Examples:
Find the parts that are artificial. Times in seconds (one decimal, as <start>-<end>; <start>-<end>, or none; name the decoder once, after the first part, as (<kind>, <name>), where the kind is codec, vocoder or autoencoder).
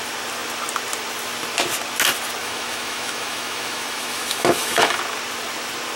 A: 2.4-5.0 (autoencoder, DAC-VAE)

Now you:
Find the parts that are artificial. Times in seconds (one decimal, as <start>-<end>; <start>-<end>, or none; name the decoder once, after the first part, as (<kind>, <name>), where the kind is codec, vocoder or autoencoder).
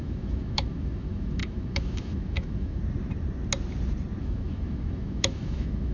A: 0.0-2.8 (autoencoder, DAC-VAE); 4.2-5.9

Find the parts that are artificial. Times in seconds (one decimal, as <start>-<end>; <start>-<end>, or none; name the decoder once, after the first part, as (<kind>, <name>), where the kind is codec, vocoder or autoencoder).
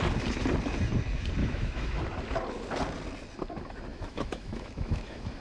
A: 1.4-2.0 (autoencoder, DAC-VAE); 3.9-5.4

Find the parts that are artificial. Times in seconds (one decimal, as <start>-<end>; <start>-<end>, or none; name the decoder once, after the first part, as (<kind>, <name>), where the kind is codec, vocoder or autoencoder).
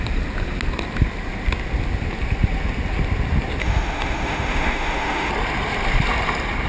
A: 3.6-5.3 (autoencoder, DAC-VAE)